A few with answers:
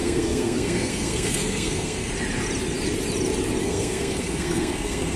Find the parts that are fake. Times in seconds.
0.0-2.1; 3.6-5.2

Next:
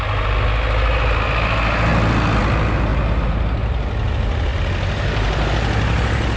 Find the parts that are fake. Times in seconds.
none

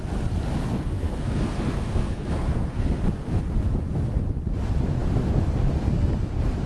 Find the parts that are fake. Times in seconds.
0.7-3.0

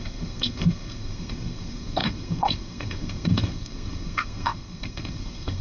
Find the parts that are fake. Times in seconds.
0.0-5.6